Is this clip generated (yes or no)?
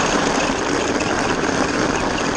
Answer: no